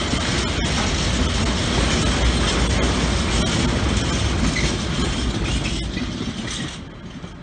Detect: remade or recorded recorded